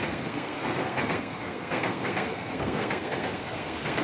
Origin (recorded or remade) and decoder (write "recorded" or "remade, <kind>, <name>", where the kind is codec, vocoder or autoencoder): remade, codec, SNAC